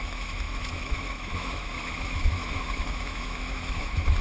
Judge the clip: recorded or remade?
remade